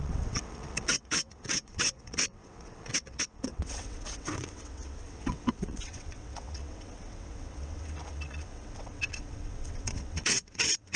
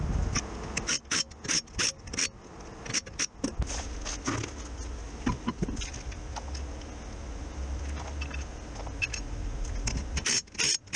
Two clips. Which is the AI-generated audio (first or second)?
first